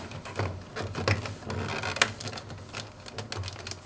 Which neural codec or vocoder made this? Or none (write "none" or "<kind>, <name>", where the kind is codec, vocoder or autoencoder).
none